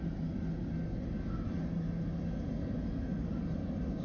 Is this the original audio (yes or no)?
yes